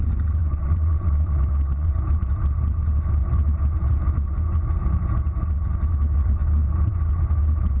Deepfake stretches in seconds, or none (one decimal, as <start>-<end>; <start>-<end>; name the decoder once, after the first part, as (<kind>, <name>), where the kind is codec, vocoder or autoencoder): 0.4-1.9 (vocoder, WaveNeXt)